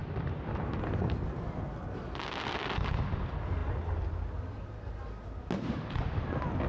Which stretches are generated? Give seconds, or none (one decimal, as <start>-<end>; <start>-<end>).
none